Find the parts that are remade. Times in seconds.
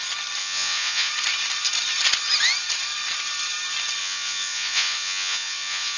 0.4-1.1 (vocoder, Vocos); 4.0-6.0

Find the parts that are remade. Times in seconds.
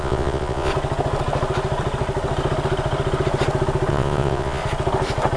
0.0-0.7 (vocoder, Vocos); 3.9-4.6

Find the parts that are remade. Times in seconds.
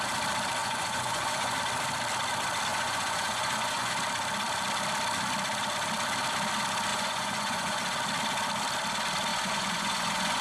0.6-1.6 (vocoder, Vocos); 2.7-3.9; 6.9-7.8; 9.3-10.4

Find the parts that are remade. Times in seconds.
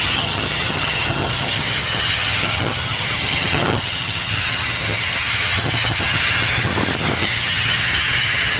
0.0-6.7 (vocoder, HiFi-GAN); 7.2-8.6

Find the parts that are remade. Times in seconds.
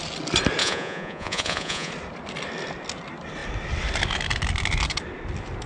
0.6-1.9 (vocoder, Vocos)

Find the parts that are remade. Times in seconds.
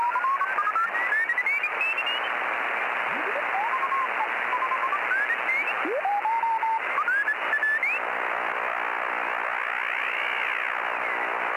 none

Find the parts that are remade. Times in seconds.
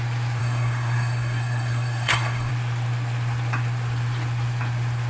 0.4-2.5 (codec, SNAC)